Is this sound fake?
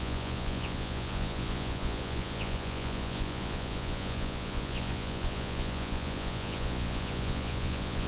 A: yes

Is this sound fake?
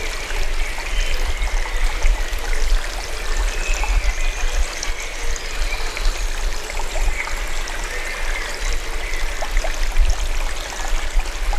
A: no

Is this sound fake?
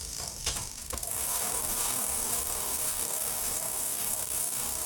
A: yes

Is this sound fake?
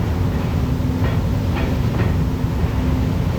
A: no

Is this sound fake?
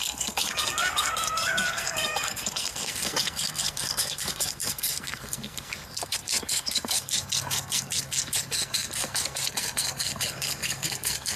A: yes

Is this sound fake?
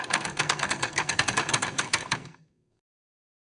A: yes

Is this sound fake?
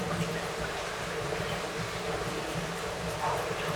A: yes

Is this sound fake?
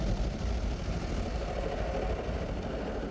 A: no